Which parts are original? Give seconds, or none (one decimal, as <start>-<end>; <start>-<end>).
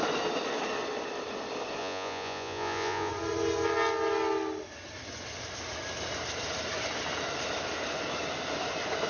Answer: 0.0-1.8; 3.1-9.1